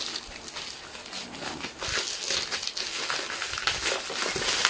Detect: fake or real real